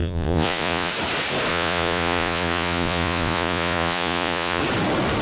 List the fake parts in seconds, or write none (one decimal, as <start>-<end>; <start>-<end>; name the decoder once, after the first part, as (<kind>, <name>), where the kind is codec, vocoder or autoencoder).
0.0-0.9 (vocoder, Vocos); 1.5-4.6